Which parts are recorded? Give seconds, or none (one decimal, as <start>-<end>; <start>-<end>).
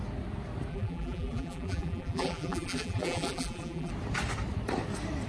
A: 0.0-0.7; 3.9-5.3